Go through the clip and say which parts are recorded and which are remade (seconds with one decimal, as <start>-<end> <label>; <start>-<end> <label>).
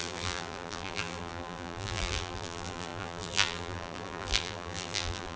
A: 0.0-5.4 remade